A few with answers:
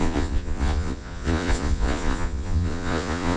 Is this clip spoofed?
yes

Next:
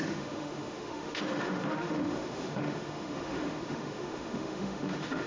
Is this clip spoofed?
yes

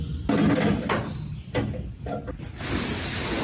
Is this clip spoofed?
no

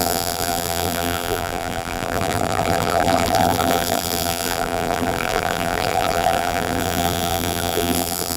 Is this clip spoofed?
yes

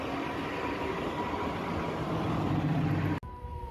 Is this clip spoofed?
no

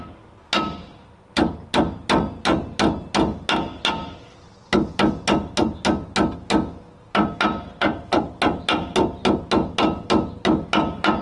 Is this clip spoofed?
no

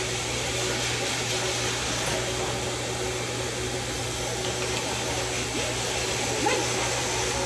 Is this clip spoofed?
no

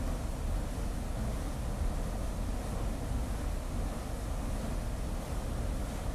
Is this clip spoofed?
no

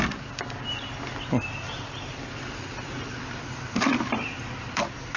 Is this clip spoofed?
no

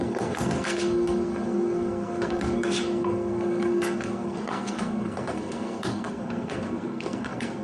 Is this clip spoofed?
yes